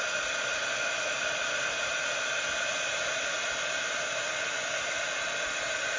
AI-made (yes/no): no